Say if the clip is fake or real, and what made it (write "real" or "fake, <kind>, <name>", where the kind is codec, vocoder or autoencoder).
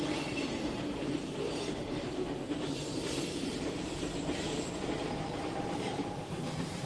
fake, vocoder, BigVGAN v2